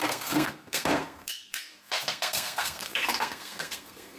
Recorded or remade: remade